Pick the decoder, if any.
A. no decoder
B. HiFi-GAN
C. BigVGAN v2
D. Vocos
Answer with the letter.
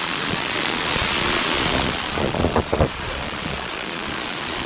D